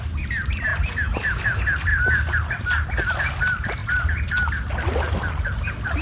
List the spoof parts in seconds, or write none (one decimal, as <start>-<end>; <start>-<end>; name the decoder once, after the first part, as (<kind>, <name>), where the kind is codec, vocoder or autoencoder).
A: none